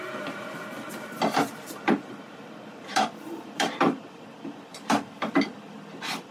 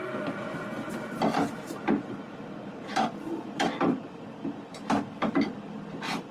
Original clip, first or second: second